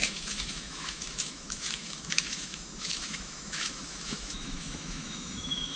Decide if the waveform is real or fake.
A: fake